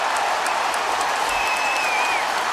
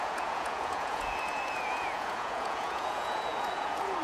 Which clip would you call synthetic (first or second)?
second